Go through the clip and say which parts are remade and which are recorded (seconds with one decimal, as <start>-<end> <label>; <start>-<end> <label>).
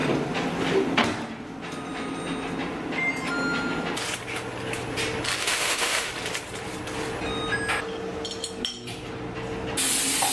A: 0.0-5.4 recorded; 5.4-6.1 remade; 6.1-10.3 recorded